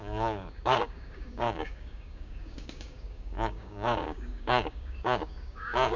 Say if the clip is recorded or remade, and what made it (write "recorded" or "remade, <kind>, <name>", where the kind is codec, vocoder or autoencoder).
remade, codec, DAC